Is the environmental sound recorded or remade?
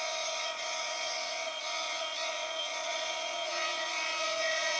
remade